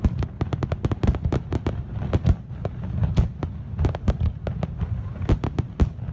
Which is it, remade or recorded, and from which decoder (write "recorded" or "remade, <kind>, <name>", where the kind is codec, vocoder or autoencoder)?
recorded